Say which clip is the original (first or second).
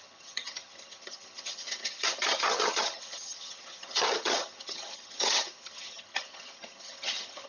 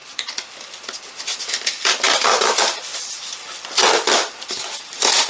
second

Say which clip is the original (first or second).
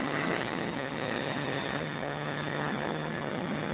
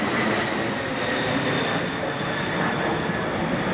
second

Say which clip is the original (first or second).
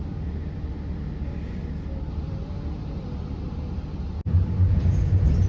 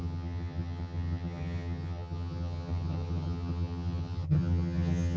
first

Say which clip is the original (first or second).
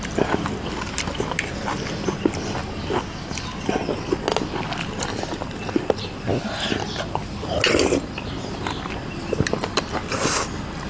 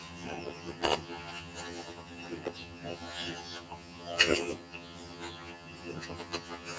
first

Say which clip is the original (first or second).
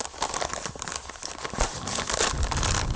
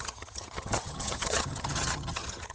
first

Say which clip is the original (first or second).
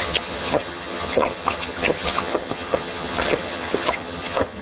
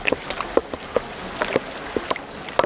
second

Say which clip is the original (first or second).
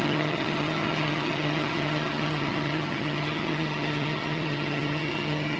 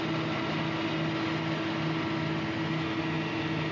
second